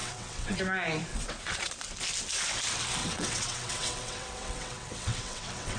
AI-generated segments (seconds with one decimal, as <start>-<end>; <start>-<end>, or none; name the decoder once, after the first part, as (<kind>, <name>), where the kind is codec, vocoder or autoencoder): 0.0-0.6 (vocoder, WaveNeXt); 1.1-1.7; 3.0-5.8